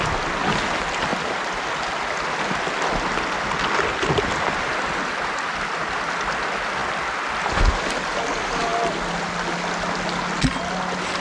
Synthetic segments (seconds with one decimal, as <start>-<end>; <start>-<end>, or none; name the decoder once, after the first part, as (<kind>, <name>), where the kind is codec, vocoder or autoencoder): none